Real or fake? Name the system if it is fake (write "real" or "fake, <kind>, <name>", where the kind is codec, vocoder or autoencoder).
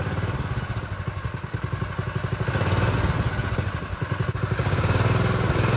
real